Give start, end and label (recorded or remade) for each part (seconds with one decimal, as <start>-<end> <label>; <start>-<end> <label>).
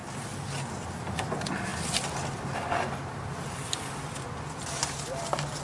0.0-5.6 recorded